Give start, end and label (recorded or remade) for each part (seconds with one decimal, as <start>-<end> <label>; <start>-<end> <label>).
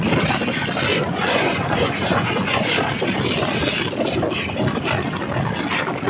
0.0-0.9 recorded; 0.9-2.7 remade; 2.7-6.1 recorded